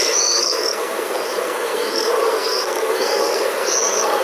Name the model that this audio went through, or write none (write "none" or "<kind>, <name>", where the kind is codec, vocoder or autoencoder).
codec, SNAC